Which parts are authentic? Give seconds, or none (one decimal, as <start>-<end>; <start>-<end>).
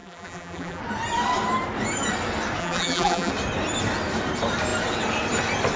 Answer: 0.8-2.6; 3.3-5.8